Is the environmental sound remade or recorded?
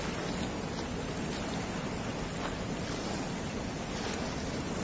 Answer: recorded